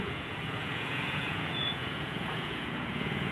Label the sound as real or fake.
fake